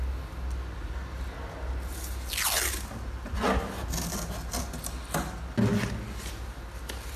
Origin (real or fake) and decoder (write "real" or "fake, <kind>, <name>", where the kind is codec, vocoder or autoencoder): real